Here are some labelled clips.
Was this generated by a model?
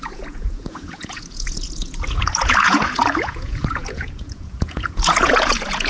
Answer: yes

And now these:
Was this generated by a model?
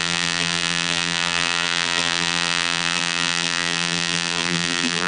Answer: yes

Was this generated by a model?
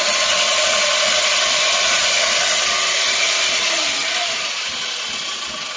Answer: yes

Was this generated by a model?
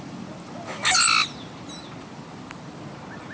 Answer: no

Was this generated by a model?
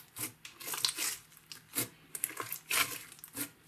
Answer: no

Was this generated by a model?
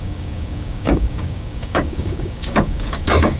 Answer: yes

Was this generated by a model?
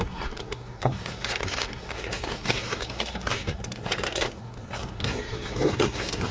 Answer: yes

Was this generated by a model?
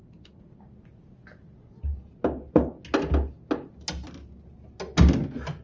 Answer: no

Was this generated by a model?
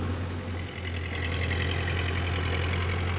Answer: no